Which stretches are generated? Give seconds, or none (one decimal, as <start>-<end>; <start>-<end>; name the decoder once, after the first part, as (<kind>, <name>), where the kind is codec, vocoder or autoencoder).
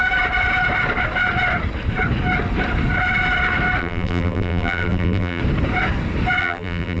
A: 3.8-5.4 (vocoder, BigVGAN v2); 6.4-7.0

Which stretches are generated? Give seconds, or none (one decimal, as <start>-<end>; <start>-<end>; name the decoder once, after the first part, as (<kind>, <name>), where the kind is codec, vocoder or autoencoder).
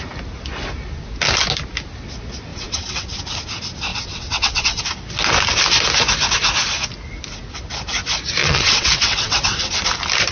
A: 2.5-3.2 (vocoder, WaveNeXt); 3.9-4.8; 8.4-9.7